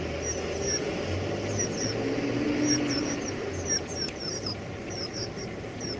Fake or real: real